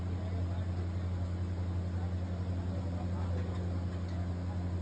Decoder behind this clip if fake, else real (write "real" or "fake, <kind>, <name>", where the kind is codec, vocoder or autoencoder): real